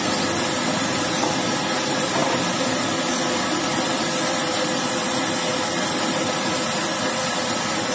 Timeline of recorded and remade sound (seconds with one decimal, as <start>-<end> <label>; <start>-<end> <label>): 0.0-7.9 recorded